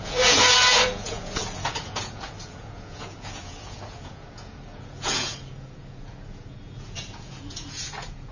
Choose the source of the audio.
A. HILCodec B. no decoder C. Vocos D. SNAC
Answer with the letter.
C